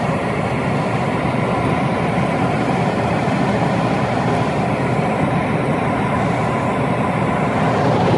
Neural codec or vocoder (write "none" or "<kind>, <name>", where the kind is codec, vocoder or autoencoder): none